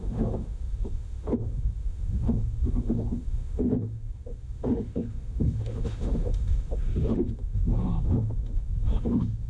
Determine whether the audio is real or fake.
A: fake